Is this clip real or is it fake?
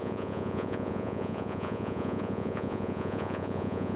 fake